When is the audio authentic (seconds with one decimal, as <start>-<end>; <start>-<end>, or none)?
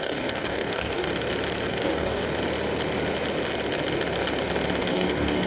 1.1-1.7; 2.2-4.8